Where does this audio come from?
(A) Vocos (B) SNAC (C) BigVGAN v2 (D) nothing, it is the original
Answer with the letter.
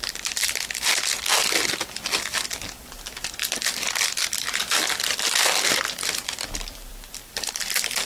C